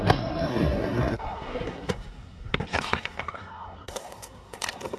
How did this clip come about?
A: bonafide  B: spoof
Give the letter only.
B